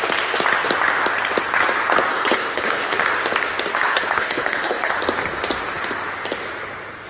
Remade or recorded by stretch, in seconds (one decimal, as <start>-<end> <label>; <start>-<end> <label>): 0.0-2.1 recorded; 2.1-3.0 remade; 3.0-3.7 recorded; 3.7-4.9 remade; 4.9-7.1 recorded